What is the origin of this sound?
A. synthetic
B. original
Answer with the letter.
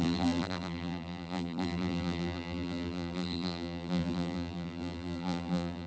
A